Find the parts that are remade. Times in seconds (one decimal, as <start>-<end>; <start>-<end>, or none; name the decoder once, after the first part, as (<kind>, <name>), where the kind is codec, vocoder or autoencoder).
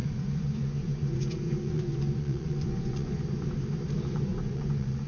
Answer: 0.0-3.1 (vocoder, Vocos); 4.3-5.1